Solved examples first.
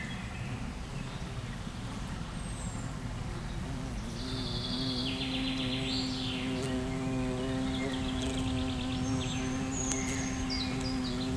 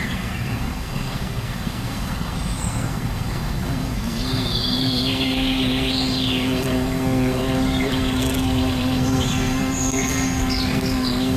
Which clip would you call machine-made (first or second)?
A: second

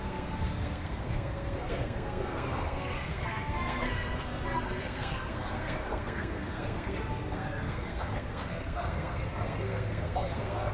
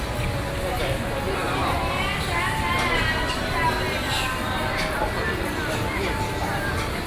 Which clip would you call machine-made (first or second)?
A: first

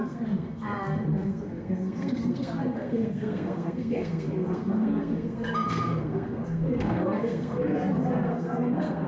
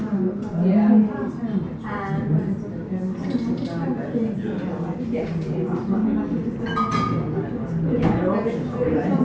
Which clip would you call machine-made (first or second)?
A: first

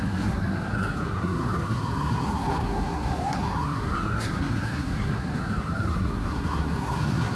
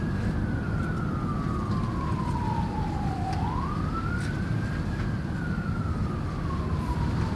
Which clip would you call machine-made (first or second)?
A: first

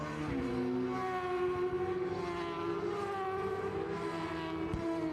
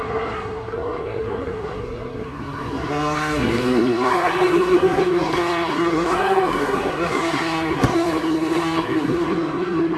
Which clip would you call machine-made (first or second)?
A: second